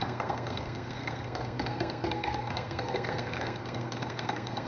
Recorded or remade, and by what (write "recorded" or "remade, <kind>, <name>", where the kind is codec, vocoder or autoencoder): remade, codec, SNAC